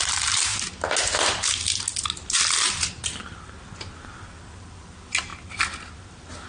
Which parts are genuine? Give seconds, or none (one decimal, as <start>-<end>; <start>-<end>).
0.0-6.5

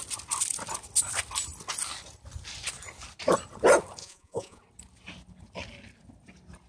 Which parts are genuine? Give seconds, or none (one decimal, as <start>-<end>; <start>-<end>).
0.0-4.0; 4.6-6.7

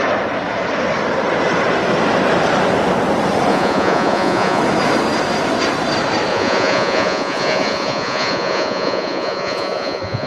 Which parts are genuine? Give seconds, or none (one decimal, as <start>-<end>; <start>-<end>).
0.0-3.5; 4.6-6.3

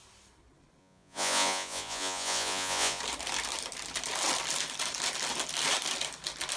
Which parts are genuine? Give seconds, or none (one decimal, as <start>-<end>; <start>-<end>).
0.0-0.8; 3.0-6.6